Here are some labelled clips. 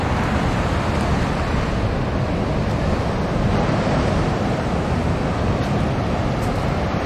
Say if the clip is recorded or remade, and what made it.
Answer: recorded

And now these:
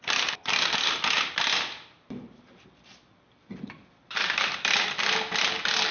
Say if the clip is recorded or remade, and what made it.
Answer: remade, vocoder, BigVGAN v2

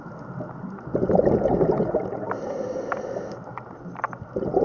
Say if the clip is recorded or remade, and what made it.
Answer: recorded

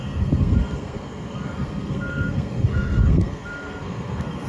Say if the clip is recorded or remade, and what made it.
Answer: remade, codec, SNAC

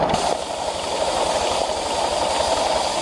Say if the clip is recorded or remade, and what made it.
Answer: recorded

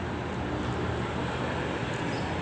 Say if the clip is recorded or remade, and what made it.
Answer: recorded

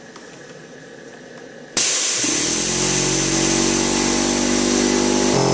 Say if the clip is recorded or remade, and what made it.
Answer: recorded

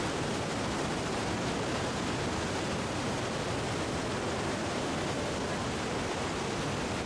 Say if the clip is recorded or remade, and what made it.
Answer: recorded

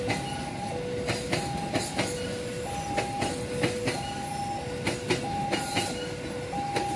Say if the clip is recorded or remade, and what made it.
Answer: recorded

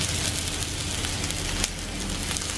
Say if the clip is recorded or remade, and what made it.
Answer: recorded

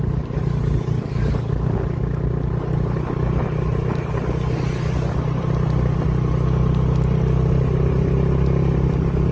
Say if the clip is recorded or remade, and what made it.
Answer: recorded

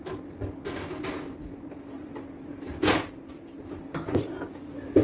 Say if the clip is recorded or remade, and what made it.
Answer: recorded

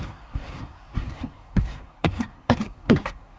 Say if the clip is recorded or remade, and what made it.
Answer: remade, codec, SNAC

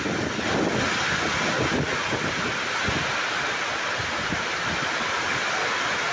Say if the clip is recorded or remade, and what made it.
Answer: recorded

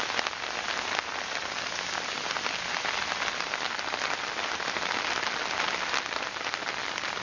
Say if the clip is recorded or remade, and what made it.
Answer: recorded